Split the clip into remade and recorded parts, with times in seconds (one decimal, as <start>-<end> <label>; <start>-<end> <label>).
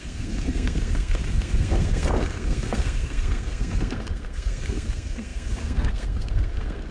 0.0-6.9 remade